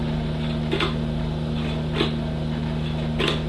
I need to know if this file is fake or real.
real